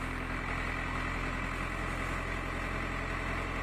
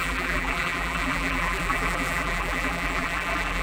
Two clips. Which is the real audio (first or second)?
first